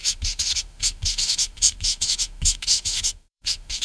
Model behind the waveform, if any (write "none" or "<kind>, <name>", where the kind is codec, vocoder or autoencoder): autoencoder, DAC-VAE